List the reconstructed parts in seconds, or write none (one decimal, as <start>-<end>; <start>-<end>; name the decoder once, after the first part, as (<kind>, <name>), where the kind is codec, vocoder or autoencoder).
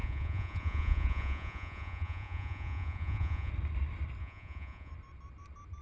0.0-3.5 (vocoder, Vocos); 4.2-4.9